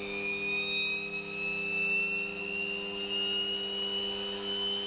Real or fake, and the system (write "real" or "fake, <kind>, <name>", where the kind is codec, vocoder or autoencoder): real